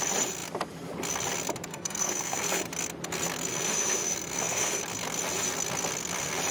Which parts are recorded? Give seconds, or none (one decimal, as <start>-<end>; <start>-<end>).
0.0-1.7; 2.6-3.5; 4.8-6.5